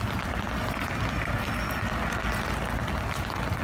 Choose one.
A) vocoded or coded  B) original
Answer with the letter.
B